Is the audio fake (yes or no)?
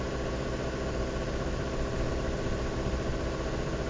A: no